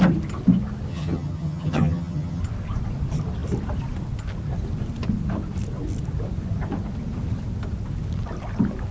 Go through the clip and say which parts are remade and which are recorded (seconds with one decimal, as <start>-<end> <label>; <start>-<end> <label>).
0.0-0.9 recorded; 0.9-2.4 remade; 2.4-8.9 recorded